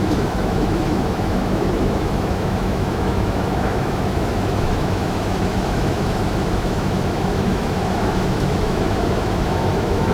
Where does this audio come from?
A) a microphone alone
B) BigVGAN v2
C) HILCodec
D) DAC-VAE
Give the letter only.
D